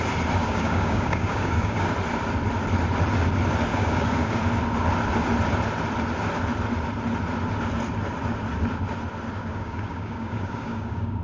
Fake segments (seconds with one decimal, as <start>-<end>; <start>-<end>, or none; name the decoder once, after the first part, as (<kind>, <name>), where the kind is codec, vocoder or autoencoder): 0.4-1.9 (codec, DAC); 3.7-4.4; 9.4-11.2